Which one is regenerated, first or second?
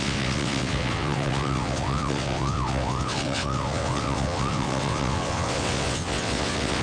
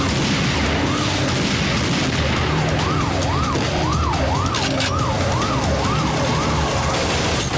first